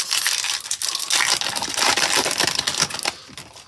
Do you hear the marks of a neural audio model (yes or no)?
no